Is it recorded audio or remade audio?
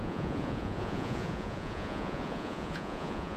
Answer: remade